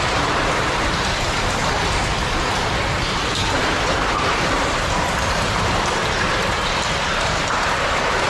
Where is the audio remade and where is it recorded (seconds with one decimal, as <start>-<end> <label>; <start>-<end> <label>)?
0.0-1.6 remade; 1.6-3.6 recorded; 3.6-8.3 remade